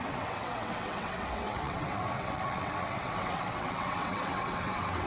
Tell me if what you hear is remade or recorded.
remade